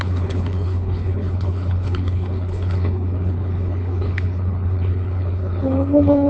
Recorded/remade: remade